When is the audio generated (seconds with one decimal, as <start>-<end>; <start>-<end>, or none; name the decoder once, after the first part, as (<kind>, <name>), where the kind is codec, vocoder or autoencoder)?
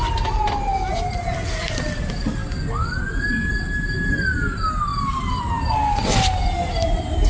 4.9-5.4 (vocoder, BigVGAN v2)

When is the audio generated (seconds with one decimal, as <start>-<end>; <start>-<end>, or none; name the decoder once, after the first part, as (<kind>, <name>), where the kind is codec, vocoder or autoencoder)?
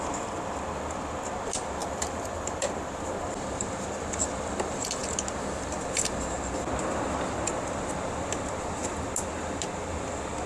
1.8-3.1 (vocoder, BigVGAN v2)